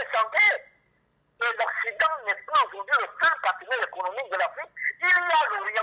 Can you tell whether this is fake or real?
real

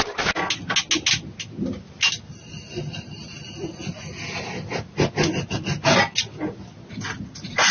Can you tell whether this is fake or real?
real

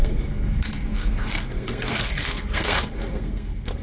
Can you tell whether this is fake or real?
fake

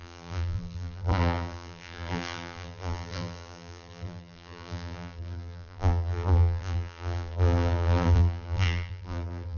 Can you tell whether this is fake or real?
fake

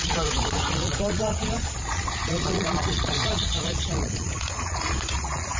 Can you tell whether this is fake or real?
fake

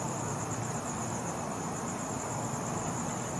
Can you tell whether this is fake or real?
real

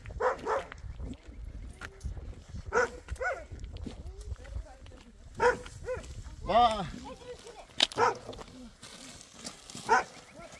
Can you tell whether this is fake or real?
real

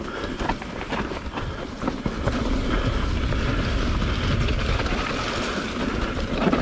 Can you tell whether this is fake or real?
real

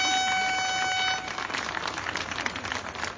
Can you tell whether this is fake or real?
real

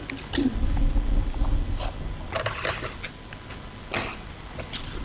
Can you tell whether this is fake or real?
real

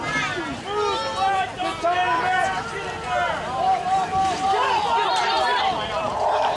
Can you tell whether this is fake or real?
real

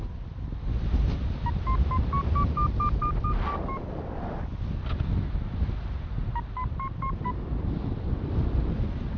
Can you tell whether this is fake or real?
real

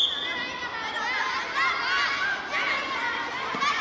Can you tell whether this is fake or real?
real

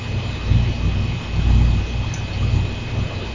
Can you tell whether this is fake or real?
real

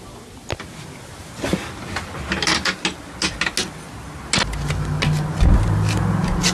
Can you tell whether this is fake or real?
real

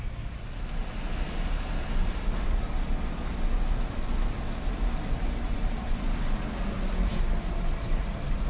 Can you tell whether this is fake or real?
real